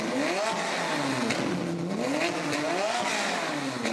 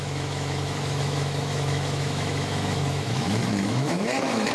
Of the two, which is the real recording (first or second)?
first